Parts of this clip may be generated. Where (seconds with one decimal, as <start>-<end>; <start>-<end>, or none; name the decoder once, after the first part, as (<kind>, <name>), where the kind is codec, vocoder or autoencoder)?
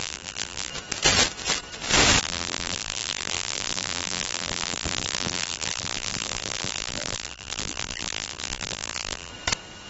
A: 0.0-0.7 (vocoder, BigVGAN v2); 2.2-9.3